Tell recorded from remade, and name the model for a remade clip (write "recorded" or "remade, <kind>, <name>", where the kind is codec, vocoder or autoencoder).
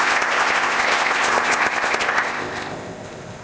remade, codec, ZipCodec